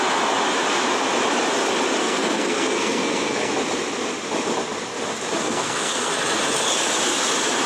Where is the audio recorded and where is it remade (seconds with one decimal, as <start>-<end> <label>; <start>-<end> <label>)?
0.0-2.0 recorded; 2.0-3.5 remade; 3.5-5.4 recorded; 5.4-6.1 remade; 6.1-7.7 recorded